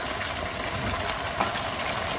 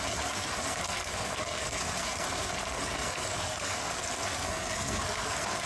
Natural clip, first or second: first